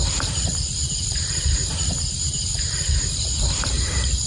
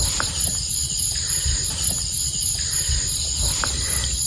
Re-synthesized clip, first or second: first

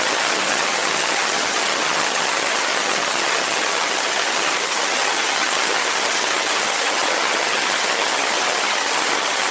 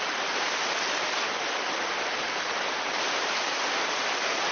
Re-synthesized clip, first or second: first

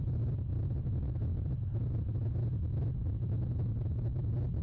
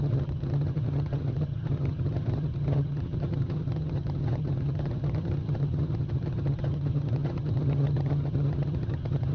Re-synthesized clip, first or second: second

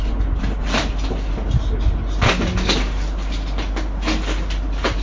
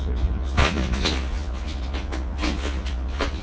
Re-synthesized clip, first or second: second